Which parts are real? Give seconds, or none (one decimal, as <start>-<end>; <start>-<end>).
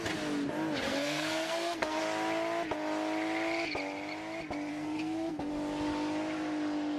0.0-0.9; 2.0-4.7; 5.5-7.0